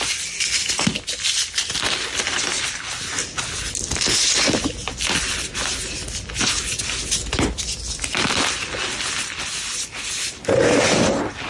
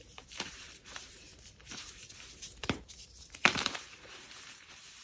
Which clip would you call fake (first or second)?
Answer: second